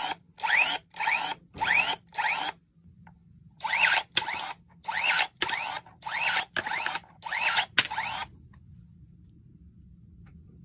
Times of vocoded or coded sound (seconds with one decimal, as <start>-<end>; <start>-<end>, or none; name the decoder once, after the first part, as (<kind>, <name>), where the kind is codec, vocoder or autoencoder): none